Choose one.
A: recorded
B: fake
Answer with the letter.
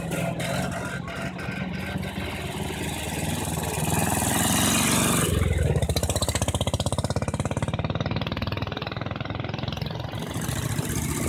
A